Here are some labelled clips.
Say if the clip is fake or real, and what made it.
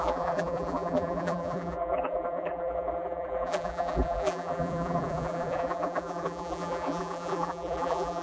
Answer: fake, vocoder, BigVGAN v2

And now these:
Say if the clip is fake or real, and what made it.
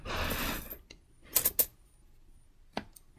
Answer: real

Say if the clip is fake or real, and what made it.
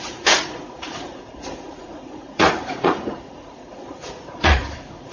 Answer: fake, vocoder, Vocos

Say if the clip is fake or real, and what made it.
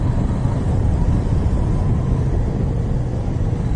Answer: real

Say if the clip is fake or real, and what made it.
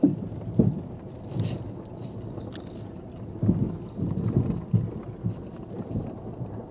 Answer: real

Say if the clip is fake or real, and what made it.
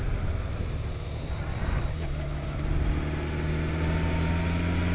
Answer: real